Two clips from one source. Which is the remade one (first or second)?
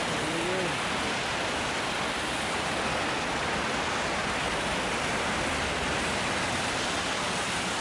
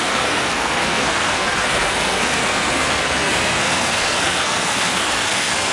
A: second